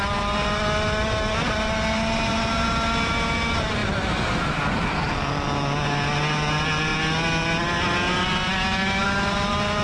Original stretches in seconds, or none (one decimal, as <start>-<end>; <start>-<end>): 0.0-9.8